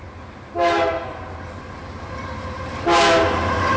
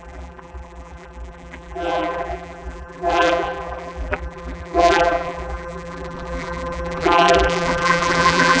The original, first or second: first